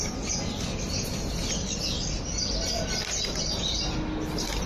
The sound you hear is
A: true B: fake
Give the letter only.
A